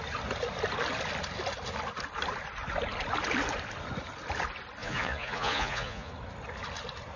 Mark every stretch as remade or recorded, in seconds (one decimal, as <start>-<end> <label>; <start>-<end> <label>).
0.0-4.8 recorded; 4.8-6.1 remade; 6.1-7.2 recorded